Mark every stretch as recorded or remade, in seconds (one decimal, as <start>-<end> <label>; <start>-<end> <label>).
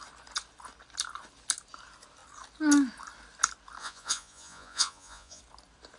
0.0-3.8 recorded; 3.8-5.4 remade; 5.4-6.0 recorded